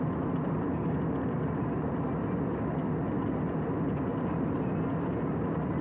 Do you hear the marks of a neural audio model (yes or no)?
no